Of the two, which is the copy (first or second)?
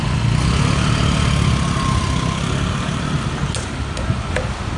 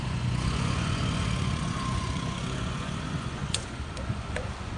second